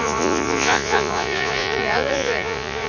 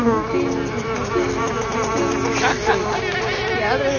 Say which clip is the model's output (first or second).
first